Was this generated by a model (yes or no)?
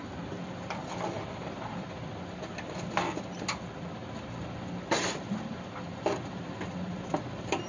no